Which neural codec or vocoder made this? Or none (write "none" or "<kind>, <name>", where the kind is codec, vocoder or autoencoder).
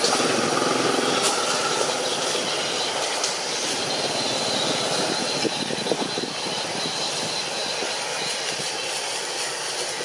none